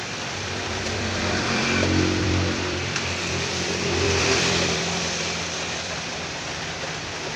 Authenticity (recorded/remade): remade